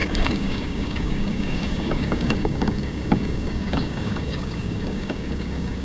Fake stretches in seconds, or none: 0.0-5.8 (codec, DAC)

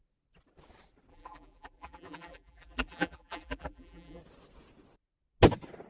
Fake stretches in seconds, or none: 1.1-4.2 (vocoder, BigVGAN v2)

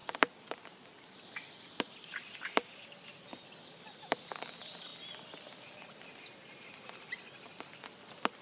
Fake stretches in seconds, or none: none

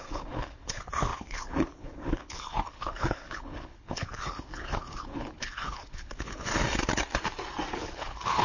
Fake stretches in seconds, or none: 0.0-6.5 (codec, HILCodec); 7.8-8.4

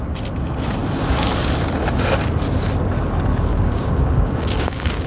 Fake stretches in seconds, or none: 3.5-5.1 (codec, DAC)

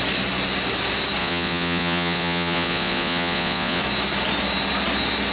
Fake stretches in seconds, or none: 1.2-3.8 (vocoder, Vocos)

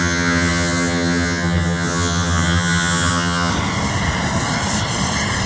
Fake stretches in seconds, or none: 0.0-3.5 (vocoder, HiFi-GAN)

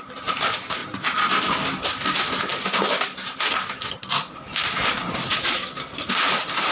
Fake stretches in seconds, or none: 5.6-6.1 (codec, SNAC)